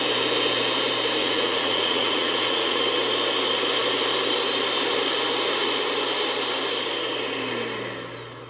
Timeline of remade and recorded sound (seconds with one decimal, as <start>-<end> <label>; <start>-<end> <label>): 0.0-1.2 recorded; 1.2-2.8 remade; 2.8-8.5 recorded